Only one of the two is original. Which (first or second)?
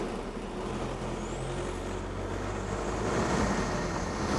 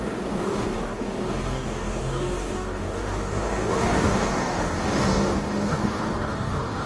first